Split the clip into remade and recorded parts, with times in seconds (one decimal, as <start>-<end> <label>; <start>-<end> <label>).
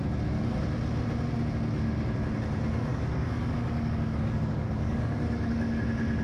0.0-2.9 recorded; 2.9-5.8 remade; 5.8-6.2 recorded